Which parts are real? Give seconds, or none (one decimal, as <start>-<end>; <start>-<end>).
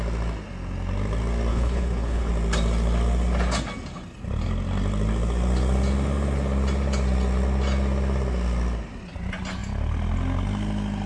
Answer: 0.0-1.5; 2.3-11.1